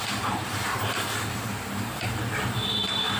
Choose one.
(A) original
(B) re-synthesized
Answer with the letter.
B